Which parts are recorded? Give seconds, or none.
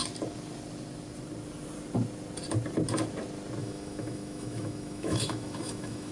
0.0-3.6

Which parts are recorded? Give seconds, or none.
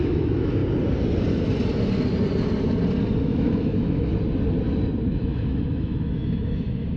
0.6-3.2; 4.1-5.0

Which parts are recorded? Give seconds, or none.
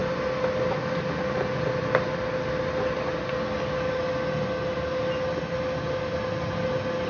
0.0-7.1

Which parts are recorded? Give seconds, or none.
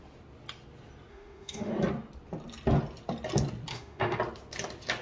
0.0-1.1; 1.7-3.7; 4.2-5.0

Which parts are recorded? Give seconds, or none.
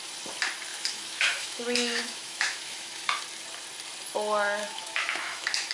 0.0-0.7; 3.2-4.6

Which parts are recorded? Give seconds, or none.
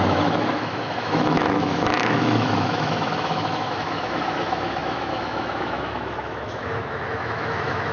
none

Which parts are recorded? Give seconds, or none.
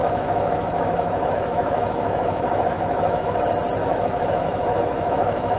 3.4-3.8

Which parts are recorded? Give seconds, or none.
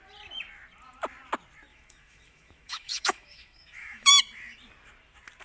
0.0-1.7; 4.1-5.4